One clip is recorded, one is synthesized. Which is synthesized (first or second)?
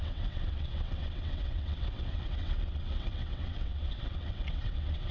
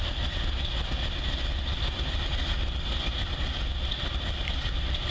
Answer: first